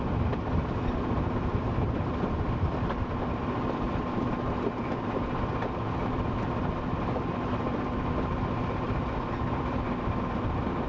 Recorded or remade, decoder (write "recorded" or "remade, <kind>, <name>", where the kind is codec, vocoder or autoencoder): recorded